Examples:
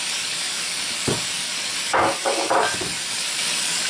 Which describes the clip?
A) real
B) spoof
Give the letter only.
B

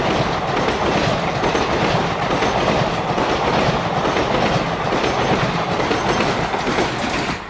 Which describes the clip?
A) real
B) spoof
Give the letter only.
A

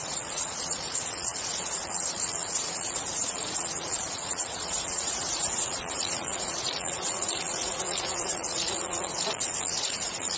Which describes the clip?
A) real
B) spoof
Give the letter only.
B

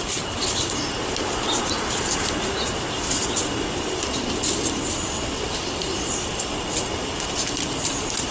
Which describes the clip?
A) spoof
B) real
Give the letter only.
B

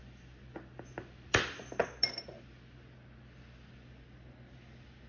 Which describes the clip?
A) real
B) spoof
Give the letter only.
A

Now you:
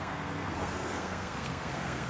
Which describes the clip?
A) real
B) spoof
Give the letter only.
B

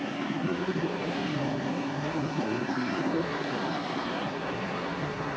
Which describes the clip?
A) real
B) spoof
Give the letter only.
B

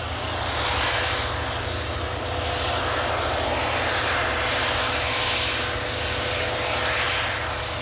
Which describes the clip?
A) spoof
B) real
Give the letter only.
B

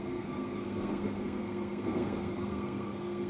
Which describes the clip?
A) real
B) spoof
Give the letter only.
B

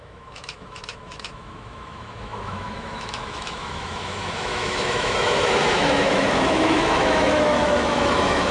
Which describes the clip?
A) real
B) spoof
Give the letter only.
B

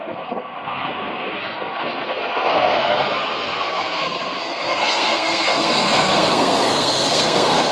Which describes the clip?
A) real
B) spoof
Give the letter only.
B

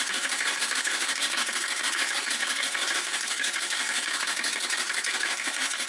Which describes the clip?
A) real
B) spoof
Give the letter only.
B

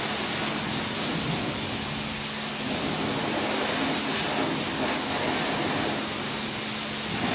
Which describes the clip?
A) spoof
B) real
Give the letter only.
B